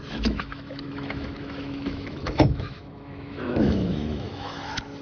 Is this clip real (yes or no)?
no